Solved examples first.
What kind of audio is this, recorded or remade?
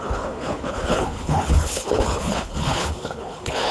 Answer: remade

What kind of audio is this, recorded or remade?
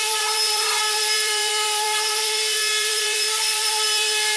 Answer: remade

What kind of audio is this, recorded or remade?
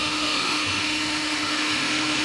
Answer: remade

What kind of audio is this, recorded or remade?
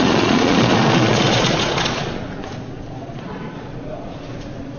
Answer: remade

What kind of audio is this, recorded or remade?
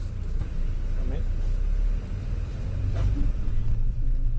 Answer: recorded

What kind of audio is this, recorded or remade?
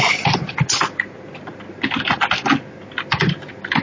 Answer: recorded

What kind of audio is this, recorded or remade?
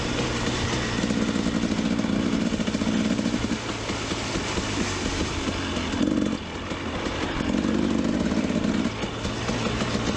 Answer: recorded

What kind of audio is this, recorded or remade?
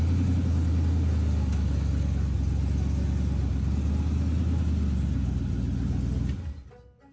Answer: recorded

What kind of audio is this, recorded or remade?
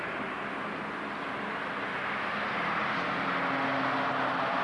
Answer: recorded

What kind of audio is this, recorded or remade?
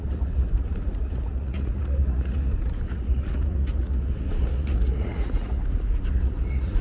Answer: remade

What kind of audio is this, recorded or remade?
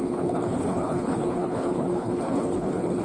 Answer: remade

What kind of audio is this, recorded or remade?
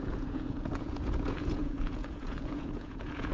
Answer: remade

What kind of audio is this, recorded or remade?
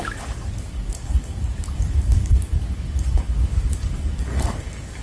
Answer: remade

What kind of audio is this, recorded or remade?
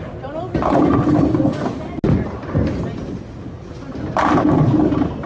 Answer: recorded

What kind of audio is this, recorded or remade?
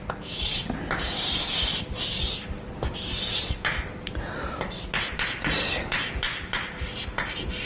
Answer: recorded